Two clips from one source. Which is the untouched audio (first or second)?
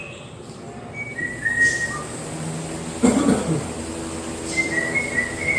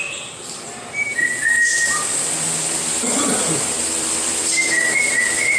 first